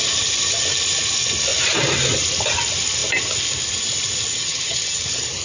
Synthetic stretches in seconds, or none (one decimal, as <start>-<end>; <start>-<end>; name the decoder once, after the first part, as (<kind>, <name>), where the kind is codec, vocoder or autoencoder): 4.3-5.0 (vocoder, HiFi-GAN)